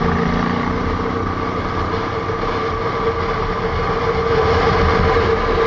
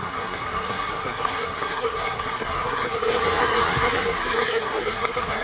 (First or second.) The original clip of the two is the first